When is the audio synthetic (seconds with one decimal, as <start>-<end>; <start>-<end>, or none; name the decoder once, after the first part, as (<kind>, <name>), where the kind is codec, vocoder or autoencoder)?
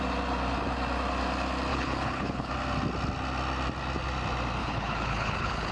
1.7-2.5 (codec, HILCodec); 4.6-5.7